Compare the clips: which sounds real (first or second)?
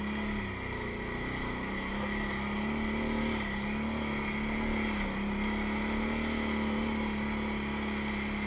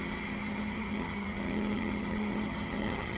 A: first